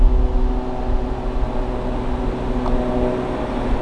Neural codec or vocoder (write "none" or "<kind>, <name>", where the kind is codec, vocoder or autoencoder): none